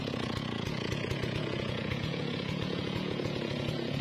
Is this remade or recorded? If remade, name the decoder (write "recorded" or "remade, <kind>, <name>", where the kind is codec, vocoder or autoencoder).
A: remade, vocoder, Vocos